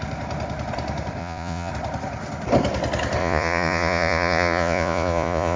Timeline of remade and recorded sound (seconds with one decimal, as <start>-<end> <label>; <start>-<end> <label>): 0.0-1.2 recorded; 1.2-1.7 remade; 1.7-3.2 recorded; 3.2-5.6 remade